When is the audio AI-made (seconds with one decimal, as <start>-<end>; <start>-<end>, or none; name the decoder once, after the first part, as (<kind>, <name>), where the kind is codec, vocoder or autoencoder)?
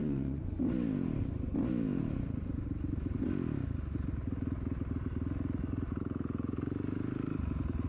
0.0-0.6 (vocoder, Vocos)